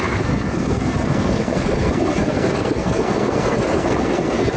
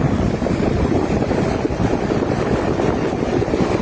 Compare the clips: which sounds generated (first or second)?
first